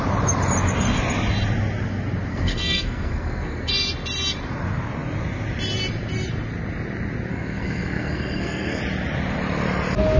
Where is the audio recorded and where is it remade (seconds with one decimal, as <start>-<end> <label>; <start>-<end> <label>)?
0.0-2.3 recorded; 2.3-3.7 remade; 3.7-7.3 recorded; 7.3-8.8 remade; 8.8-10.2 recorded